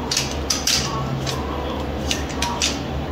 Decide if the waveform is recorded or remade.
recorded